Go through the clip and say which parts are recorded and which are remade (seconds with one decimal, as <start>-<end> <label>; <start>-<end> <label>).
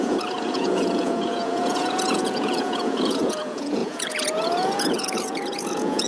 0.0-6.1 remade